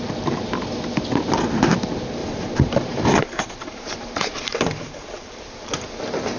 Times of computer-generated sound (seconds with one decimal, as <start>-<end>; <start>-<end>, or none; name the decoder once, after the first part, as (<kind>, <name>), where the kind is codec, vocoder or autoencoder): 2.2-6.0 (vocoder, BigVGAN v2)